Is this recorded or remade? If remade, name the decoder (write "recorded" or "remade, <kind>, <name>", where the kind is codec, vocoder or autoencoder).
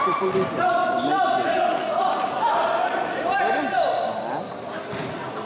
remade, vocoder, BigVGAN v2